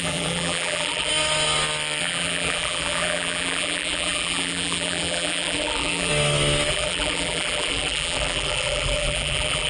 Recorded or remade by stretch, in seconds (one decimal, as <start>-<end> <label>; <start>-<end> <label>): 0.0-1.1 remade; 1.1-2.0 recorded; 2.0-6.1 remade; 6.1-6.7 recorded; 6.7-9.7 remade